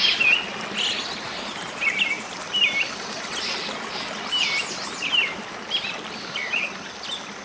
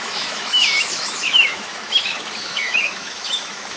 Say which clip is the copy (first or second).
second